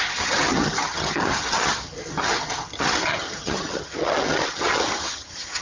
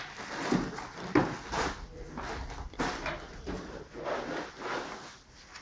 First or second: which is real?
second